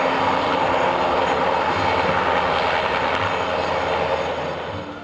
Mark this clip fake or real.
real